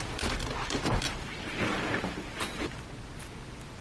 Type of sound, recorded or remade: recorded